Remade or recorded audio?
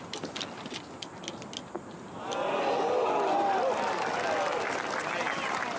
recorded